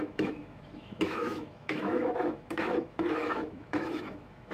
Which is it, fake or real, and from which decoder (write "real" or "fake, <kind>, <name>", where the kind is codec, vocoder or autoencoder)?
fake, autoencoder, DAC-VAE